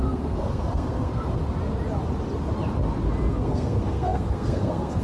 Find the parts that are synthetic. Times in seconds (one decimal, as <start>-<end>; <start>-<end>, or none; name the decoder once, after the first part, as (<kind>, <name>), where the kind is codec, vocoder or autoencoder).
0.0-1.4 (codec, SNAC); 3.3-5.0